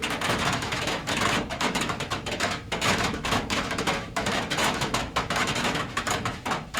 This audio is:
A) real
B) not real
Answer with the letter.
B